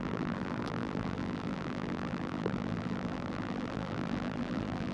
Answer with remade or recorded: remade